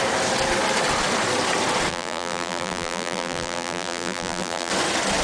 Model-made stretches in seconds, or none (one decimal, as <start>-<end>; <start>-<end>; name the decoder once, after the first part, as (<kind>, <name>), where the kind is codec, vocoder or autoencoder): 1.9-4.7 (vocoder, BigVGAN v2)